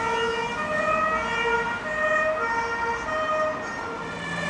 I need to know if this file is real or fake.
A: real